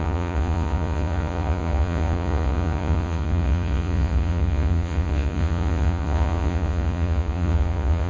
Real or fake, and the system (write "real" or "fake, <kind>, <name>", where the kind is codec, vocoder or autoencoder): fake, vocoder, Vocos